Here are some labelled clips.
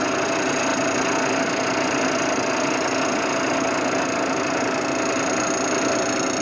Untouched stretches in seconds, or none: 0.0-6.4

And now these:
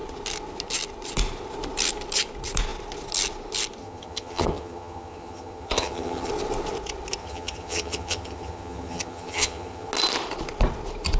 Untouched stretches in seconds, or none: 0.0-3.8; 6.3-7.2; 9.9-11.2